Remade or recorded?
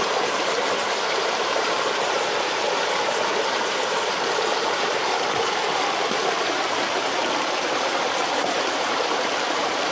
remade